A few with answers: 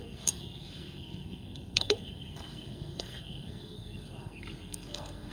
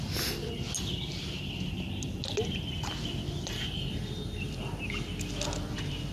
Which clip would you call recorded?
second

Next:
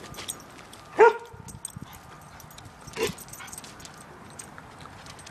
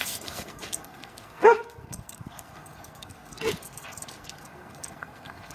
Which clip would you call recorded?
first